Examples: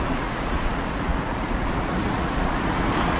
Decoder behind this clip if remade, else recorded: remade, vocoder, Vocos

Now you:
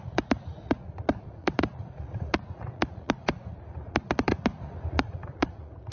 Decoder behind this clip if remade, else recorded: remade, vocoder, Vocos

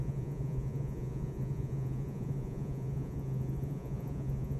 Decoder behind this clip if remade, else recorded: remade, vocoder, Vocos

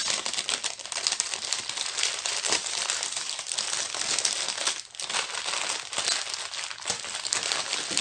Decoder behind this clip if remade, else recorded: recorded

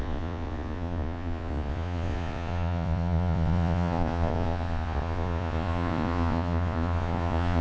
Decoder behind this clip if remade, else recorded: remade, vocoder, Vocos